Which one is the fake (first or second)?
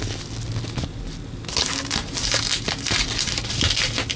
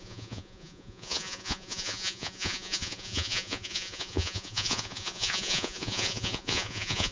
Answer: second